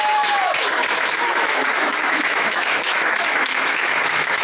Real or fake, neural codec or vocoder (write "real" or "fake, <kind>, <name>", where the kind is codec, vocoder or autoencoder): fake, autoencoder, DAC-VAE